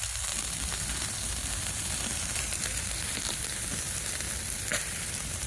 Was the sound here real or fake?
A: fake